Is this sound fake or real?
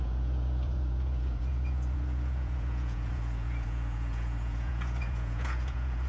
fake